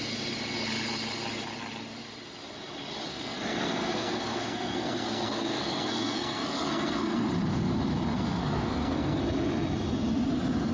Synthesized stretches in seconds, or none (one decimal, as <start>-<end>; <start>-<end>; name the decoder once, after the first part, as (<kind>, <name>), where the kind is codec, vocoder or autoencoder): 3.1-7.3 (codec, SNAC); 8.1-9.2

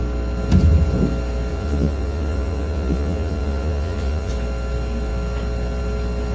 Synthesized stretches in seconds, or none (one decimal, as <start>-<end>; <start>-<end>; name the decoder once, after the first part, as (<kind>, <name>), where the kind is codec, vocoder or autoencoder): 1.5-4.3 (vocoder, Vocos)